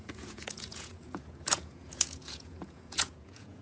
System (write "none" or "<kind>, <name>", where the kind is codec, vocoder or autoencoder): vocoder, Vocos